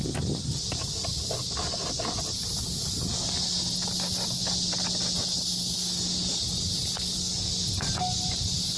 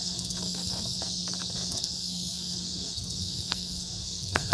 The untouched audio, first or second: first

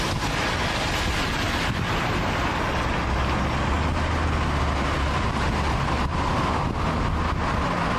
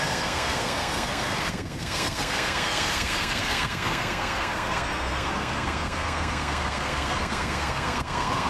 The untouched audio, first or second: first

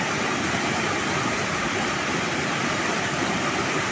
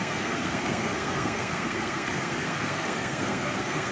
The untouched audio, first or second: first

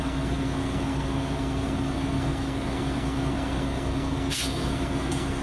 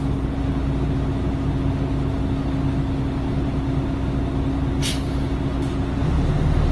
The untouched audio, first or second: second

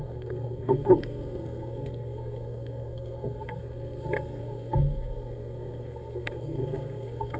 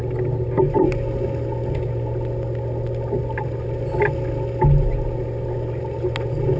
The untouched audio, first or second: second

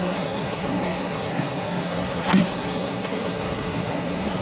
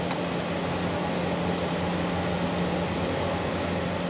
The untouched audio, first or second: second